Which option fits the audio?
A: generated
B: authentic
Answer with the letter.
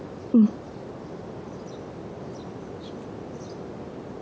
B